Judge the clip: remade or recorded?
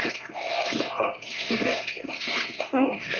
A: remade